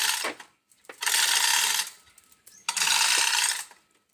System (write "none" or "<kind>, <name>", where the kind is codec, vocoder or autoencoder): none